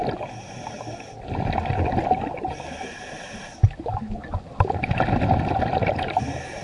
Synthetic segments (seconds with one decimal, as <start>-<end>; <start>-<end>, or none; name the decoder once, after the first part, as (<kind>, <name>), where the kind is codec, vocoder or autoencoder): none